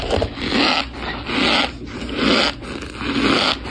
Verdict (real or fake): real